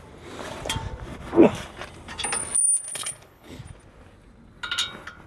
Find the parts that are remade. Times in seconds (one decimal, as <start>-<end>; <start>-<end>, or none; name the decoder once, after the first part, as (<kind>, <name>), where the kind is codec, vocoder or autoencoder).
2.9-3.6 (codec, HILCodec)